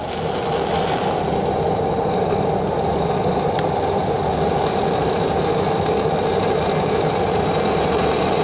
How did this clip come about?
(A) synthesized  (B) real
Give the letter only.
B